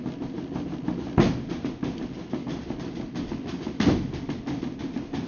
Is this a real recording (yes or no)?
yes